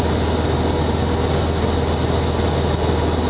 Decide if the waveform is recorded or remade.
recorded